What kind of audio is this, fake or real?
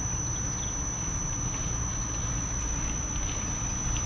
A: real